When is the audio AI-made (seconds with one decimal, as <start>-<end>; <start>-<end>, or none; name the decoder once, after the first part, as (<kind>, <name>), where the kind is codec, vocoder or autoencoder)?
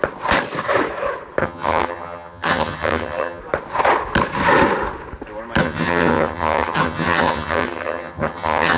1.4-3.4 (vocoder, HiFi-GAN); 5.6-8.8